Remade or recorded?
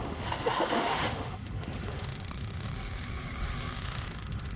remade